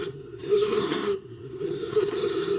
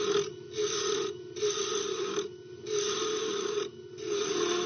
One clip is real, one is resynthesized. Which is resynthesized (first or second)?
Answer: first